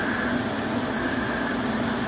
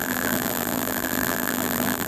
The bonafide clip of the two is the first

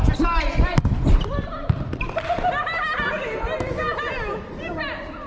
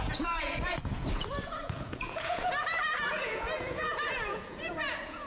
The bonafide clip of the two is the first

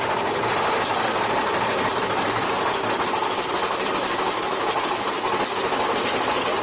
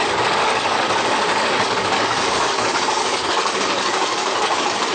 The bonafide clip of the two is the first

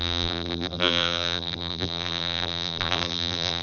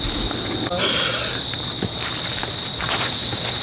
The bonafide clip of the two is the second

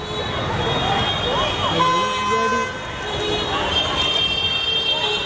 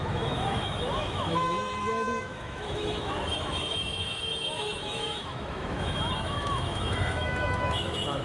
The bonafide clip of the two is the first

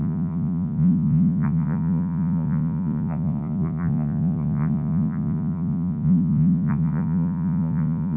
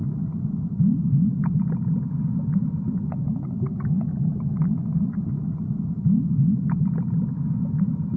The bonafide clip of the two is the second